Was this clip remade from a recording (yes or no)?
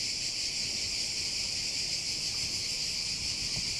no